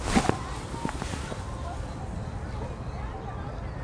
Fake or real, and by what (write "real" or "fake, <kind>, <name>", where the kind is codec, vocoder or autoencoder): real